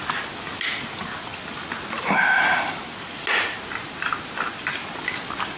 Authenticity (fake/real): real